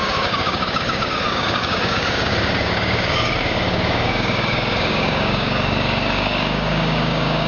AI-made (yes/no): yes